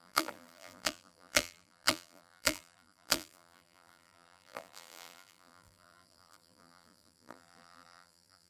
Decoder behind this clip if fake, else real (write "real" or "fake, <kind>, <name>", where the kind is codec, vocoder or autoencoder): fake, vocoder, BigVGAN v2